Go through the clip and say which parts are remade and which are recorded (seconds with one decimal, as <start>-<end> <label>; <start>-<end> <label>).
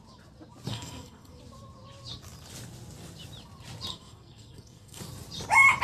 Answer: 0.0-0.7 recorded; 0.7-1.4 remade; 1.4-3.9 recorded; 3.9-5.0 remade; 5.0-5.8 recorded